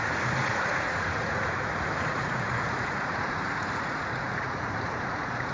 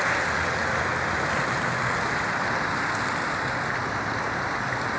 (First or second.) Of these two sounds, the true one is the second